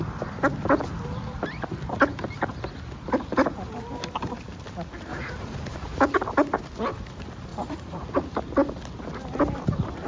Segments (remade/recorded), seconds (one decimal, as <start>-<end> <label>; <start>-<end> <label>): 0.0-5.1 recorded; 5.1-6.0 remade; 6.0-7.5 recorded; 7.5-8.3 remade; 8.3-10.1 recorded